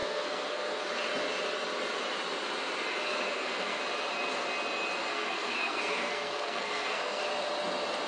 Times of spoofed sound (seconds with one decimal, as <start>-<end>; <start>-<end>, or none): 0.0-0.9; 3.1-3.8; 5.1-7.2